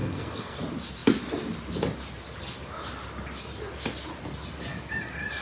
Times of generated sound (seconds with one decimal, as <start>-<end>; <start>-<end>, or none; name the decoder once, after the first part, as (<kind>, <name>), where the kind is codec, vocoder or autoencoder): 0.0-0.6 (codec, SNAC)